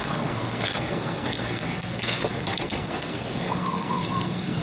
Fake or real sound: fake